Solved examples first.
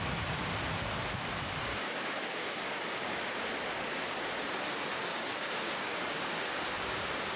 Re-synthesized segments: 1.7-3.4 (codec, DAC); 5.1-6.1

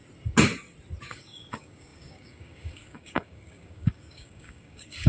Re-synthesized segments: 1.1-5.1 (codec, DAC)

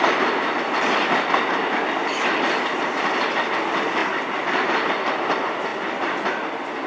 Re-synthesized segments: none

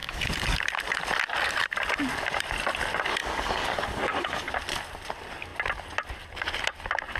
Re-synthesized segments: 0.0-0.6 (codec, DAC); 3.2-4.5

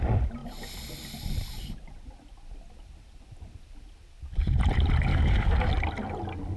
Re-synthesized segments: 5.1-5.7 (codec, DAC)

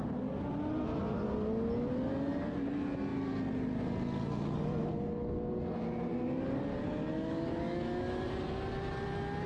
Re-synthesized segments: 6.7-8.4 (codec, DAC)